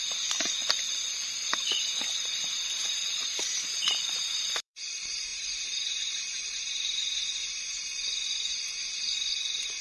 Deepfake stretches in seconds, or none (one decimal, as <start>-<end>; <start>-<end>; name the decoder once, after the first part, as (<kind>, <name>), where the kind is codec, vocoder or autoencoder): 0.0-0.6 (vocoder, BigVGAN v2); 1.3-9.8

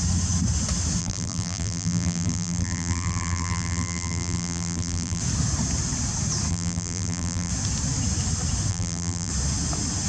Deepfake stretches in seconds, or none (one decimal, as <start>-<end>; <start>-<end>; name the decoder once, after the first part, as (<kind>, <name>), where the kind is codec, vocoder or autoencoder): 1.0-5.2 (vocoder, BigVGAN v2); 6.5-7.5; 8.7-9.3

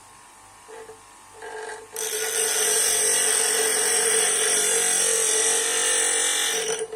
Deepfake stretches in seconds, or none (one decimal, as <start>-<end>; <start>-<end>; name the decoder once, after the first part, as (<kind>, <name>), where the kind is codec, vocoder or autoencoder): 1.7-2.2 (vocoder, BigVGAN v2); 3.7-4.6

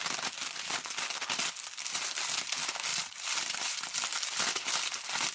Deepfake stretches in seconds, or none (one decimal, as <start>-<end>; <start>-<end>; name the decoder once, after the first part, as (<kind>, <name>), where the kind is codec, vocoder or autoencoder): 2.9-3.8 (vocoder, BigVGAN v2)